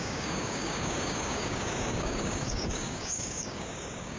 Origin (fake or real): fake